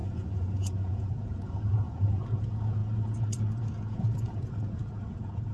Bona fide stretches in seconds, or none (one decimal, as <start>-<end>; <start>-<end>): none